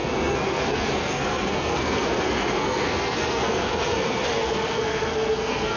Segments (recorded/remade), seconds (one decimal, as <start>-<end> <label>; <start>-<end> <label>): 0.0-5.8 remade